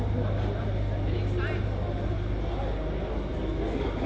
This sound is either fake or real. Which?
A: real